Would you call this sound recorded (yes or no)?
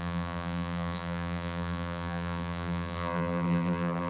no